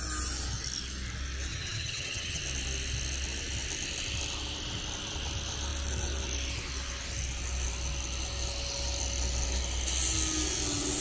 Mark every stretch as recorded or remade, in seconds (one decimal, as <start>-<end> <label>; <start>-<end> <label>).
0.0-1.5 recorded; 1.5-2.4 remade; 2.4-11.0 recorded